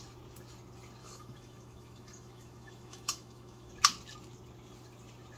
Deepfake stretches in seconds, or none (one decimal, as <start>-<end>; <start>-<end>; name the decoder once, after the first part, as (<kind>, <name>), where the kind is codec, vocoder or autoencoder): 1.0-3.7 (autoencoder, DAC-VAE)